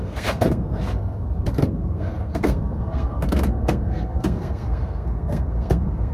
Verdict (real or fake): fake